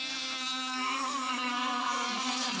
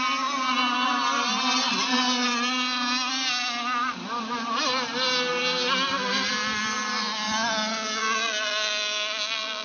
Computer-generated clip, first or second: first